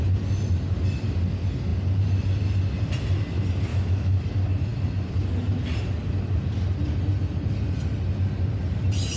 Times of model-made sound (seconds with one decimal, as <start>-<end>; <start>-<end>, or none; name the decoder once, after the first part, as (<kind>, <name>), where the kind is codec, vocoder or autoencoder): 3.7-4.2 (autoencoder, DAC-VAE)